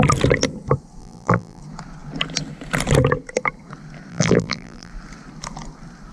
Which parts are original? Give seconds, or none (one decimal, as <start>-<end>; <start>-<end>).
0.0-1.0; 1.6-4.1; 4.9-6.1